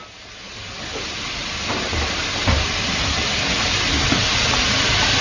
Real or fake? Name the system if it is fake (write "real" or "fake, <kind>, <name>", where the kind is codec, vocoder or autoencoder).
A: real